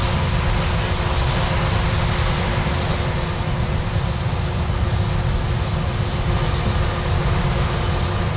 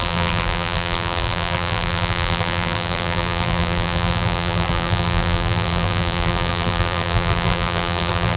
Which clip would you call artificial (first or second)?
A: second